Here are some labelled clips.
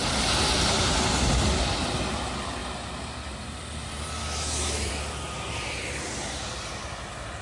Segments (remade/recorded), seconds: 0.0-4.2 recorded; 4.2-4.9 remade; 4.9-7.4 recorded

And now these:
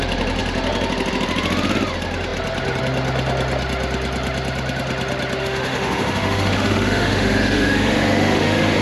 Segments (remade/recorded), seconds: 0.0-5.4 recorded; 5.4-8.8 remade

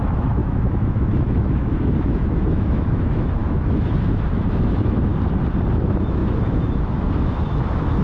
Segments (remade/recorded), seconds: 0.0-5.1 remade; 5.1-5.8 recorded; 5.8-8.0 remade

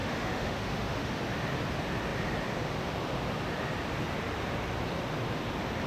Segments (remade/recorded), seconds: 0.0-1.1 remade; 1.1-5.9 recorded